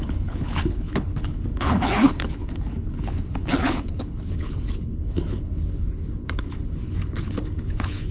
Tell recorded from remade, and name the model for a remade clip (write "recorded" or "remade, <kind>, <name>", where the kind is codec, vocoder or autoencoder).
remade, codec, HILCodec